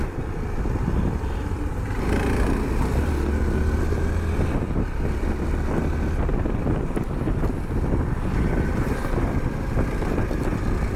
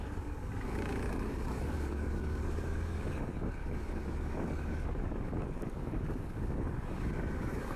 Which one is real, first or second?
first